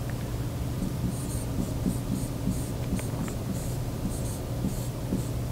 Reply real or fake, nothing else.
fake